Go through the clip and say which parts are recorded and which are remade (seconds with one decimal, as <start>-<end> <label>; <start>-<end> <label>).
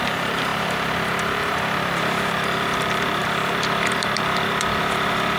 0.0-5.4 remade